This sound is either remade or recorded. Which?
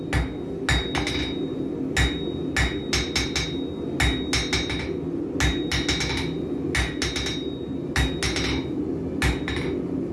recorded